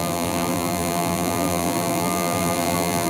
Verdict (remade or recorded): remade